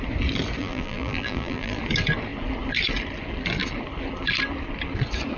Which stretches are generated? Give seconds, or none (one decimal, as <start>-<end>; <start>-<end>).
0.6-1.8